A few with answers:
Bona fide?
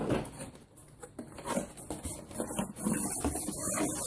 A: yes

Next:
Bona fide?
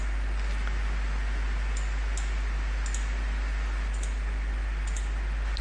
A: yes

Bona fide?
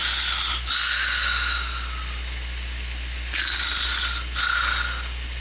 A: yes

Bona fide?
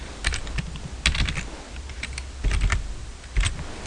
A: yes